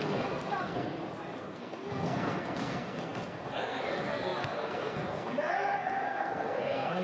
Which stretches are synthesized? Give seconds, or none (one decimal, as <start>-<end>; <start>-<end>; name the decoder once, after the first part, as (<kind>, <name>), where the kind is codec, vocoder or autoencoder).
0.0-0.9 (codec, SNAC); 1.4-7.0